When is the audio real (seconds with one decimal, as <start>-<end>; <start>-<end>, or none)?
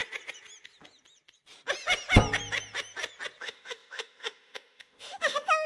0.0-3.4